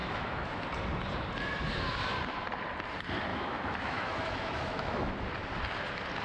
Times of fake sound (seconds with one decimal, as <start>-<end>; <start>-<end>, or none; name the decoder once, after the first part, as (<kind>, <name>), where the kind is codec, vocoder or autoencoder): 0.0-0.6 (autoencoder, DAC-VAE); 3.3-5.1